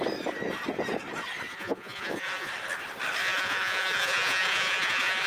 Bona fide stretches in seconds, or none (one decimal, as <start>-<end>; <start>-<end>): 0.0-1.5; 2.5-3.2